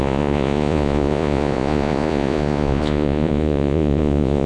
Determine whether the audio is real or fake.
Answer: fake